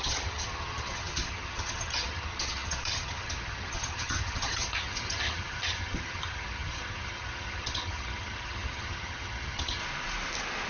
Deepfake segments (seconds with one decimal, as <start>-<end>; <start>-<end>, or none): 0.0-9.8